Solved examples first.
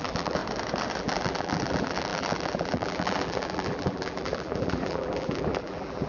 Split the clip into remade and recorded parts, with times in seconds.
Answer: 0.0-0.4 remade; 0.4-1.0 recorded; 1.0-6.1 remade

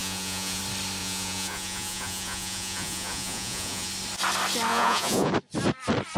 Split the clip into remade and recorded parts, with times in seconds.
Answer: 0.0-0.6 remade; 0.6-1.0 recorded; 1.0-3.9 remade; 3.9-4.7 recorded; 4.7-5.3 remade; 5.3-6.2 recorded

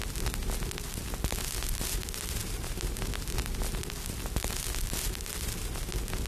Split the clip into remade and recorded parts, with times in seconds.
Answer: 0.0-2.4 recorded; 2.4-3.1 remade; 3.1-6.3 recorded